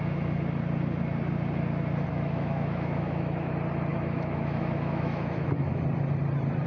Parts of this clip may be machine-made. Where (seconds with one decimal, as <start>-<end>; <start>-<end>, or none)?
2.1-3.5; 3.9-5.8